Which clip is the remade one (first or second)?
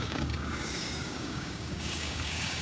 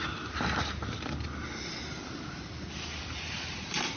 first